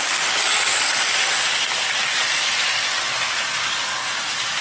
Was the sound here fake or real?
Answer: real